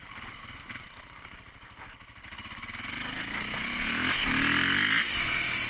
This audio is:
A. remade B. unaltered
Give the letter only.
B